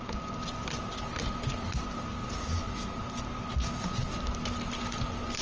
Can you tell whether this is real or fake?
real